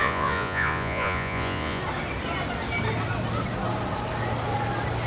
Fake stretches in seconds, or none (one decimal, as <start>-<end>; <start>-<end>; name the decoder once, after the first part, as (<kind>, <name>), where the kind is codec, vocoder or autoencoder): 0.0-1.8 (vocoder, Vocos)